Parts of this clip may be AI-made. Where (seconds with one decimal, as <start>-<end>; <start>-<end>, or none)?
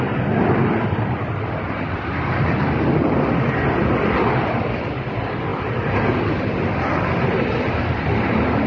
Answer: none